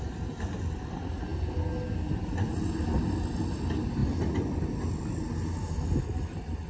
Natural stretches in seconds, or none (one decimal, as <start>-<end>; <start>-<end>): 0.0-6.7